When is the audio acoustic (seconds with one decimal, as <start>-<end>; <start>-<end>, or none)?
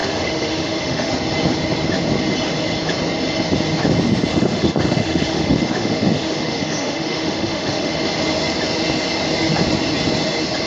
1.1-4.3; 8.0-10.7